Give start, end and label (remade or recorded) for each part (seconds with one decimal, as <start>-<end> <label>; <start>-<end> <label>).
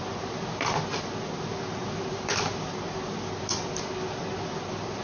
0.0-5.0 recorded